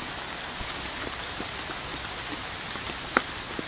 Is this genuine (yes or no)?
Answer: yes